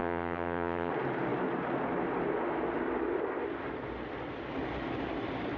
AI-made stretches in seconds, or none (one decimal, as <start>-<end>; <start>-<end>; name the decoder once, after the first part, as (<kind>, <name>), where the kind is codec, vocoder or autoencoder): 0.0-0.9 (vocoder, HiFi-GAN)